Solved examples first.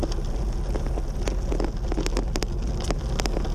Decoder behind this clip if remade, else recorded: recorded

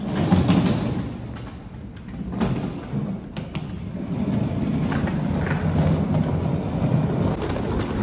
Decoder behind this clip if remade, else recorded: recorded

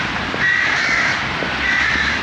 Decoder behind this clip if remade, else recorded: recorded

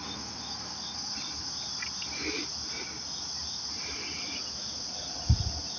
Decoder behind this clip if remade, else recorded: recorded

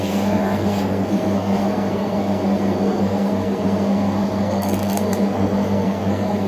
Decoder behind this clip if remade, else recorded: remade, codec, SNAC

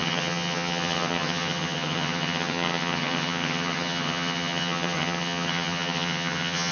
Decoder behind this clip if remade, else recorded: remade, vocoder, HiFi-GAN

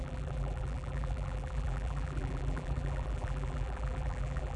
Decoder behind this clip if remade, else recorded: remade, vocoder, BigVGAN v2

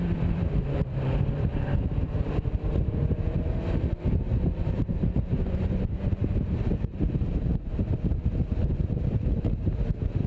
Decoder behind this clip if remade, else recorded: remade, vocoder, BigVGAN v2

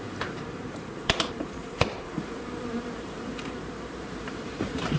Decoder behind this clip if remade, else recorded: remade, vocoder, BigVGAN v2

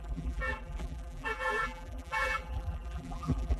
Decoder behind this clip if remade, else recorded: remade, vocoder, BigVGAN v2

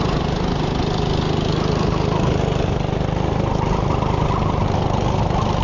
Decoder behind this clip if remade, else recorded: recorded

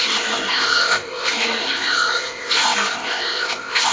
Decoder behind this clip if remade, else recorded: remade, codec, ZipCodec